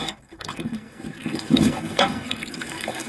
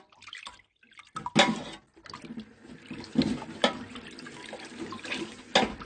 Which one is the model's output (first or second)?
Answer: first